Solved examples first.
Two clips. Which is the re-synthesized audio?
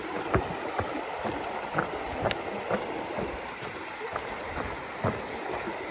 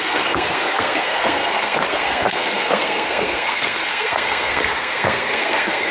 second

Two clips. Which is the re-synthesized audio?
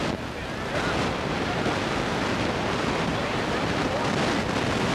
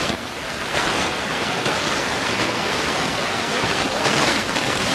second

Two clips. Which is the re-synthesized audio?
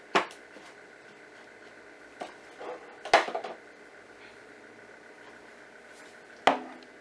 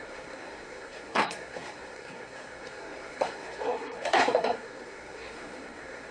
second